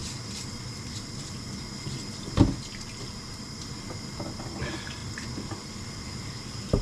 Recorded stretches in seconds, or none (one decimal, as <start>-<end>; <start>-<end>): 0.0-6.8